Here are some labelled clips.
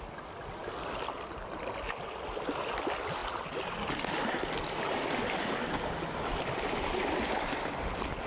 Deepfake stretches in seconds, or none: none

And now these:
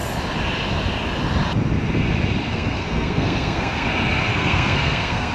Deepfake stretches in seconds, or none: 2.5-3.9 (codec, SNAC); 4.3-5.3

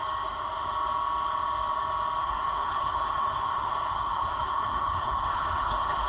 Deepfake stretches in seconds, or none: 2.2-6.1 (codec, HILCodec)

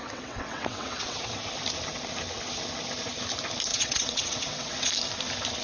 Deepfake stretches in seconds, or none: 0.0-1.4 (vocoder, WaveNeXt); 3.7-4.9

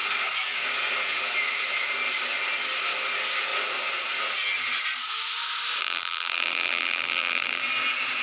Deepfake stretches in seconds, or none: 5.8-7.6 (vocoder, BigVGAN v2)